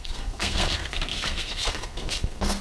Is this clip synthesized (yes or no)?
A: yes